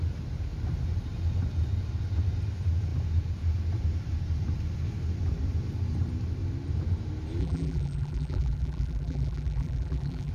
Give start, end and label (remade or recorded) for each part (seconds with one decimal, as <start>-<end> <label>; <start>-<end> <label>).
0.0-7.4 recorded; 7.4-10.3 remade